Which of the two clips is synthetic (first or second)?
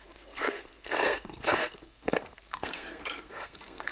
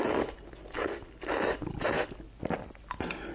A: first